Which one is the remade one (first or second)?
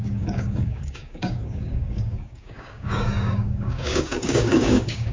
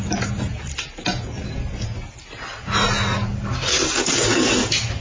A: first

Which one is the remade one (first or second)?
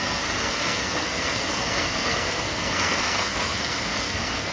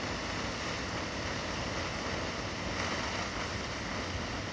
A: first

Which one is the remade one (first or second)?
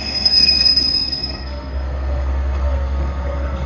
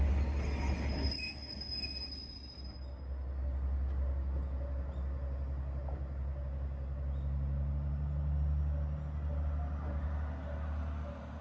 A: first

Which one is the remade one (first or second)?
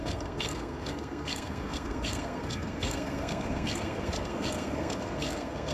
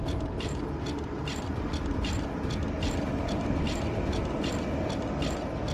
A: first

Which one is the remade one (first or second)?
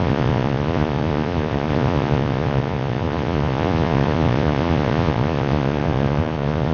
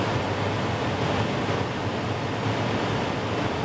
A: first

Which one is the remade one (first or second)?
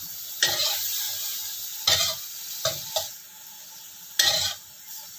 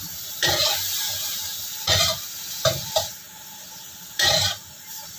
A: second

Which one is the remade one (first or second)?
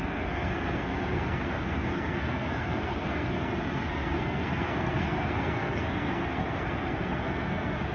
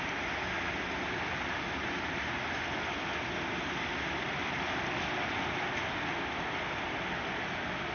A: first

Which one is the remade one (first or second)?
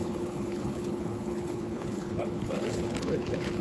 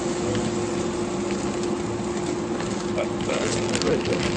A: first